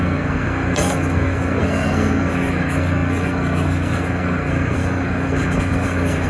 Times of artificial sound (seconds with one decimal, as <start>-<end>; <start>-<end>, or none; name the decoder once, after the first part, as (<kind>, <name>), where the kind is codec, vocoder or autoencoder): 0.0-6.3 (codec, SNAC)

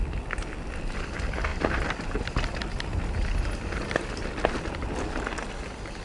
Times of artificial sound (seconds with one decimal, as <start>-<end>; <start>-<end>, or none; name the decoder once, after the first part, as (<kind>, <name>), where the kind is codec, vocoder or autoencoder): none

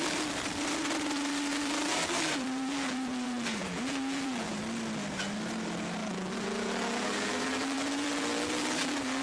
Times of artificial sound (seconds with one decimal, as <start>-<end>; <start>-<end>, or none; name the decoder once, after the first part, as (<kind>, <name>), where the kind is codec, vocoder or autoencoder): 1.5-4.6 (vocoder, BigVGAN v2); 6.0-9.2

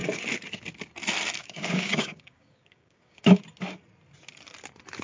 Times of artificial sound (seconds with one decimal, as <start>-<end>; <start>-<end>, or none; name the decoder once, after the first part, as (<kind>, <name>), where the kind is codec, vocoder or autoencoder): 1.4-3.4 (codec, DAC)

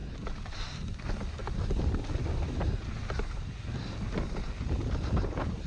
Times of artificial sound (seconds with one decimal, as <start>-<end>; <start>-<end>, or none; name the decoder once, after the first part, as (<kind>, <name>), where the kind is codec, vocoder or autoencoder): none

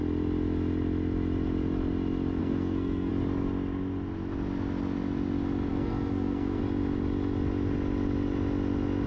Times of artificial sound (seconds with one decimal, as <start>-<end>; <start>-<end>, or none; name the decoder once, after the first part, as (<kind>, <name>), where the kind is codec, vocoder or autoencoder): 2.4-3.1 (codec, SNAC); 5.7-6.6